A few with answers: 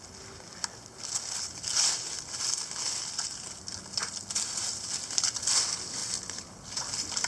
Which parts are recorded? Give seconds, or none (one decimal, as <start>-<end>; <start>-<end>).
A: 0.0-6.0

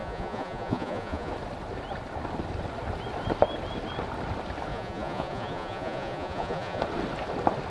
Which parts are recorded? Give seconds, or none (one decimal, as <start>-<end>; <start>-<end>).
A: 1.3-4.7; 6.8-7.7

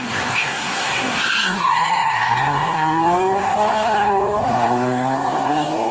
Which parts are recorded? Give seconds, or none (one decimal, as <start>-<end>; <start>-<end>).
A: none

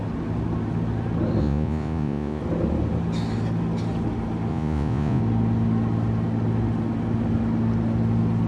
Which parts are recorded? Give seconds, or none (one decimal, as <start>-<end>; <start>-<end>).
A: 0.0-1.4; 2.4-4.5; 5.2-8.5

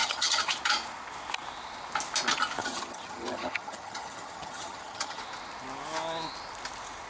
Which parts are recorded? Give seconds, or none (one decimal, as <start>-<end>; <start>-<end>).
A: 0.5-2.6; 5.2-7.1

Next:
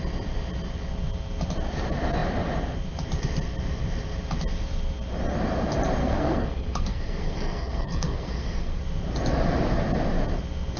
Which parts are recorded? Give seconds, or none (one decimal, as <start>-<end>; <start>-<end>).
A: 0.0-6.0; 8.8-10.8